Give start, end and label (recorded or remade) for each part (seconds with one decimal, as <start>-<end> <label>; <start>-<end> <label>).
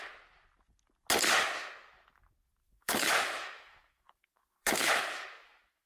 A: 0.0-2.6 recorded; 2.6-5.9 remade